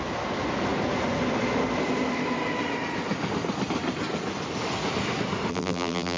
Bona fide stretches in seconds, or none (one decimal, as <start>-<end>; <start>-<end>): 0.0-5.5